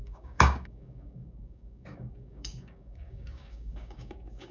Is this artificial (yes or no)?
yes